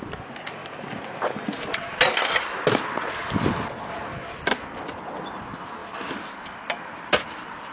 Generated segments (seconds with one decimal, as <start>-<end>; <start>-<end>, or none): none